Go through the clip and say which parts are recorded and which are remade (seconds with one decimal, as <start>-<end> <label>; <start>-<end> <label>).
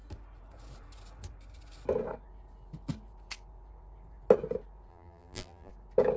0.0-4.9 recorded; 4.9-5.7 remade; 5.7-6.2 recorded